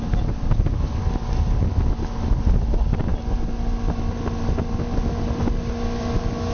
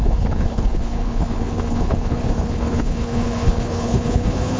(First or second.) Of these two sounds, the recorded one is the first